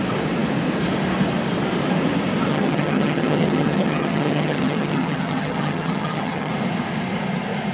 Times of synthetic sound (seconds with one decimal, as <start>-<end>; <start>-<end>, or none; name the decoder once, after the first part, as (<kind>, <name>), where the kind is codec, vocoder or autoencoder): 2.5-6.5 (vocoder, HiFi-GAN)